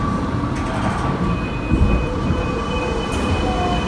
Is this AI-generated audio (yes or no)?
no